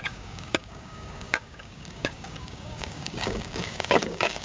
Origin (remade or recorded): remade